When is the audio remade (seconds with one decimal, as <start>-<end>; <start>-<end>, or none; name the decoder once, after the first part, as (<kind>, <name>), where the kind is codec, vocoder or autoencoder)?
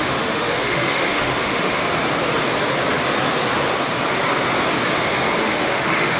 0.0-1.8 (autoencoder, DAC-VAE); 5.4-6.2